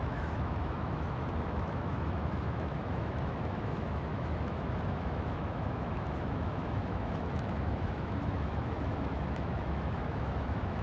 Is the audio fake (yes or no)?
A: yes